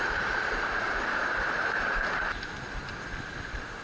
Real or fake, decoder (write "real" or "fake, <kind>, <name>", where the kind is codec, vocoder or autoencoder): real